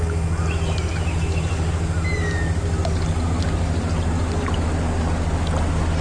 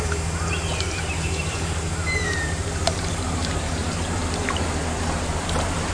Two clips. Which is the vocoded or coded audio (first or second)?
second